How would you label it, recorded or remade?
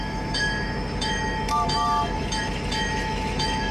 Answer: remade